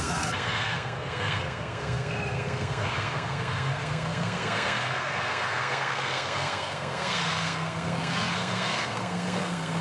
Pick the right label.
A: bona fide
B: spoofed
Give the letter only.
B